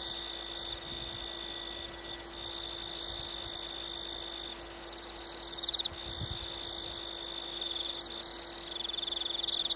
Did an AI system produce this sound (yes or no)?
no